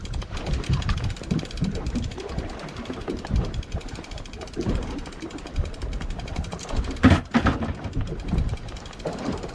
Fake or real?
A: fake